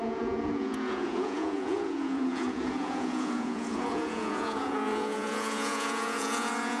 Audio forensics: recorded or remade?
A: remade